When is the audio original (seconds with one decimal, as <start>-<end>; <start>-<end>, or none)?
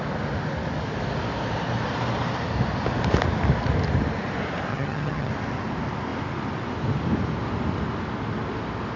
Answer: 0.0-4.7; 5.3-9.0